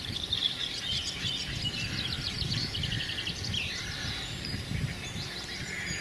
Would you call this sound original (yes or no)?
no